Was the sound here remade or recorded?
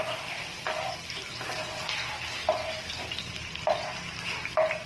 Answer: recorded